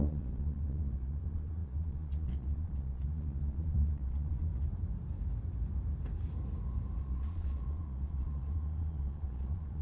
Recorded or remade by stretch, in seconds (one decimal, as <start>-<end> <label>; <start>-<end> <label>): 0.0-4.5 remade; 4.5-7.0 recorded; 7.0-9.8 remade